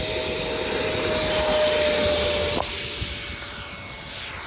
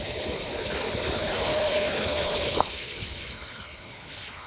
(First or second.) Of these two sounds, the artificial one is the second